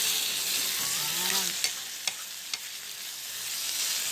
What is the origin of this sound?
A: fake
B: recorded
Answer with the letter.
B